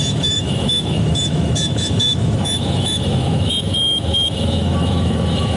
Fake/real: fake